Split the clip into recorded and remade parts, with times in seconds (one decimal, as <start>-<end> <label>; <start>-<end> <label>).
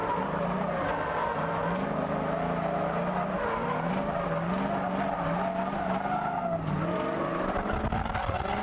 0.0-8.6 recorded